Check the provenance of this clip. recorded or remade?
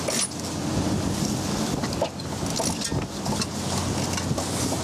recorded